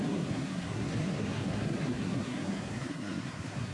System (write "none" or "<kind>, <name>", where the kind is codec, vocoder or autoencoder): codec, SNAC